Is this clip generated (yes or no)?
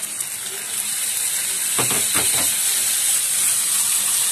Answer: no